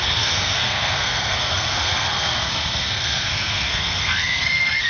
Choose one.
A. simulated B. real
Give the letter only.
A